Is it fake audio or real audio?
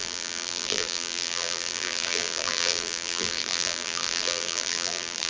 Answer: fake